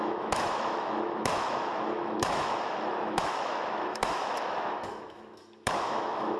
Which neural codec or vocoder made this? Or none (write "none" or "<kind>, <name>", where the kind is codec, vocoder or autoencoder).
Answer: autoencoder, DAC-VAE